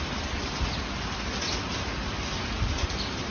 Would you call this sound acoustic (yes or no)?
yes